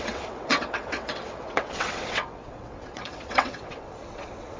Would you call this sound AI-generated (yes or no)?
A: yes